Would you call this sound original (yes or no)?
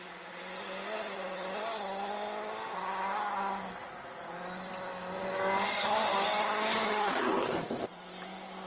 yes